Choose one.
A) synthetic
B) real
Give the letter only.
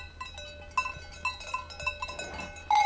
B